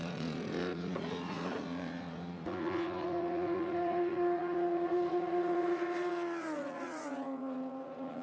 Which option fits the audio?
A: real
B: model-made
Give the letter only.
B